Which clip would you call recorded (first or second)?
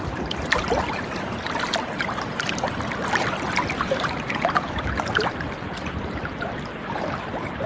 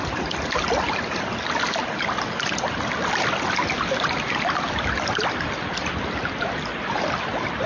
second